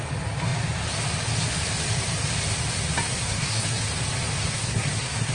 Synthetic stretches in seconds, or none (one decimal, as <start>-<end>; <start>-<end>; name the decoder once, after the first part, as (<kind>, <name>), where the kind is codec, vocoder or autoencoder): 3.1-3.8 (codec, SNAC); 4.5-5.3